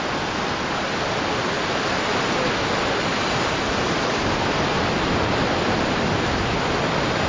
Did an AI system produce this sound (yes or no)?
no